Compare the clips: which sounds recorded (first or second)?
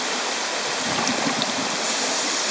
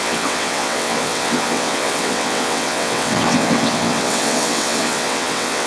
first